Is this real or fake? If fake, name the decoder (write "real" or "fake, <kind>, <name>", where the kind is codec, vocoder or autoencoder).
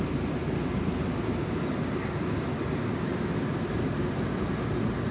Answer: real